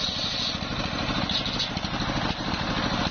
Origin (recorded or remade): recorded